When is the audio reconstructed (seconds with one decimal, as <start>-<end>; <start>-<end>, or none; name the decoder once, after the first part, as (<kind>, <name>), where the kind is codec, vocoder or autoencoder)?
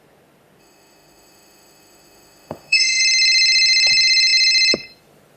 0.6-3.0 (autoencoder, DAC-VAE)